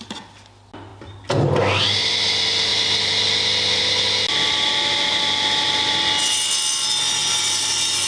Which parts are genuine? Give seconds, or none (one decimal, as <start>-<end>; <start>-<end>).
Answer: 0.0-8.1